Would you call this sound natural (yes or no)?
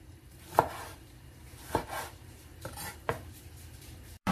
no